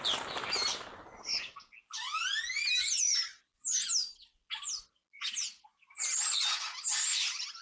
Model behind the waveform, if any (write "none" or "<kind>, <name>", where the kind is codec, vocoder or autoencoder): none